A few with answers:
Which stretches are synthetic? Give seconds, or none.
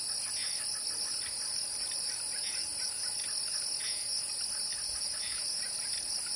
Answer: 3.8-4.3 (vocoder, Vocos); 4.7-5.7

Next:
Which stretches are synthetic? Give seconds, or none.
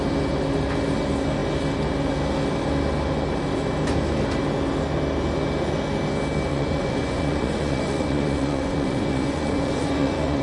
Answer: 6.5-10.4 (vocoder, Vocos)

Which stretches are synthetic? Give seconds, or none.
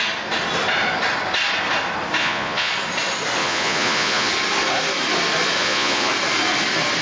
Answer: 2.2-2.7 (vocoder, Vocos); 3.4-4.3; 5.6-6.1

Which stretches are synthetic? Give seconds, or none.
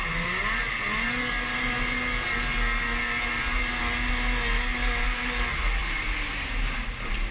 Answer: none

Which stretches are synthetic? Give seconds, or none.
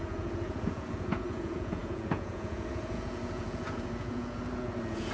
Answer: 0.0-5.1 (vocoder, Vocos)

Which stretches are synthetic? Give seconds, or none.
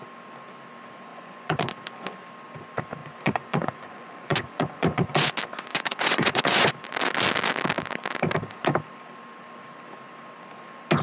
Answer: 1.1-1.7 (vocoder, Vocos); 3.0-5.3; 5.7-6.7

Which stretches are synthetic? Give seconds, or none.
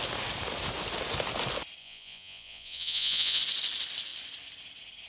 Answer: 1.8-3.4 (vocoder, Vocos)